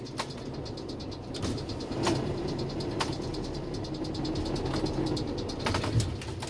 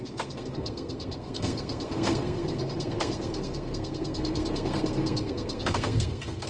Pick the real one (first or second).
first